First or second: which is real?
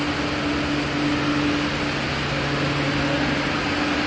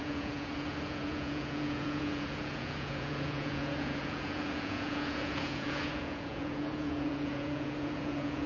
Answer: first